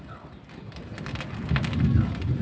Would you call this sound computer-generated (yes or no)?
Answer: no